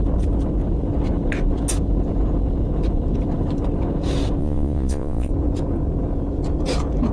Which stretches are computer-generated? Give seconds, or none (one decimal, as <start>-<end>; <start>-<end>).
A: 4.4-5.3